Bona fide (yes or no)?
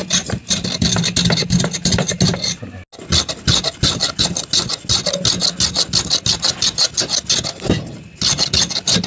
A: yes